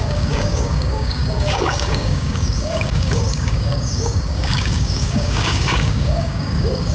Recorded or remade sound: remade